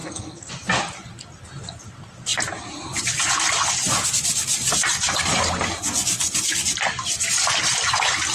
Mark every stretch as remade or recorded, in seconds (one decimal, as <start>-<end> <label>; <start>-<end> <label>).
0.0-0.5 remade; 0.5-8.3 recorded